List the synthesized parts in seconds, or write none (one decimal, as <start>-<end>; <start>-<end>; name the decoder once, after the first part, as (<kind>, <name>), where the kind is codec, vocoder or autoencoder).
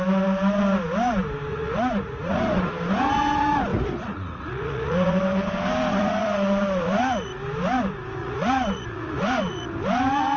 1.5-2.7 (vocoder, Vocos); 3.7-5.2; 5.9-7.3; 8.2-9.7